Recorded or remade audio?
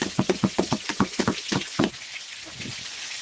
remade